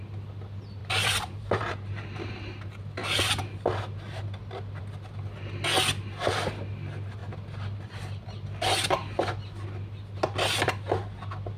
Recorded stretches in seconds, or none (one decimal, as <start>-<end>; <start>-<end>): 0.0-0.8; 2.3-11.6